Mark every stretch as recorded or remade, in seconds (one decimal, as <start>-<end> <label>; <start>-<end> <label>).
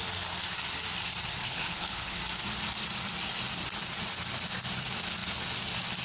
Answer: 0.0-1.4 recorded; 1.4-2.2 remade; 2.2-6.0 recorded